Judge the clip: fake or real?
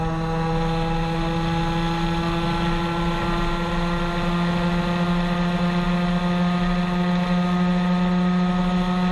real